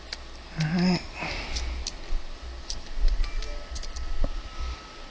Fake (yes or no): no